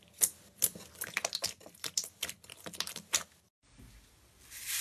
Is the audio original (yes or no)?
yes